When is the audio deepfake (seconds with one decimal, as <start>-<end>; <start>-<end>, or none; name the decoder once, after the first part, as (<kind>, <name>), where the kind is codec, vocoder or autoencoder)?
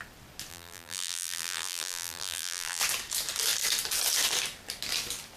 0.5-2.8 (vocoder, BigVGAN v2)